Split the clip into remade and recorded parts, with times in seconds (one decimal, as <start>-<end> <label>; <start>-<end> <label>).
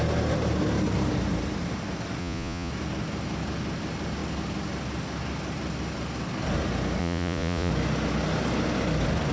0.0-2.2 recorded; 2.2-2.7 remade; 2.7-7.0 recorded; 7.0-7.7 remade; 7.7-9.3 recorded